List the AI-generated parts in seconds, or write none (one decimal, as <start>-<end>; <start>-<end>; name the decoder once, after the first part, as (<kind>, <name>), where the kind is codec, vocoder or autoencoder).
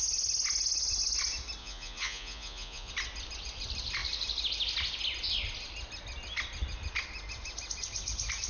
1.6-2.9 (vocoder, Vocos)